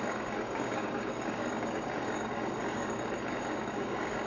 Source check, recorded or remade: remade